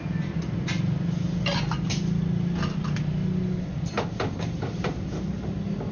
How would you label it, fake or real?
real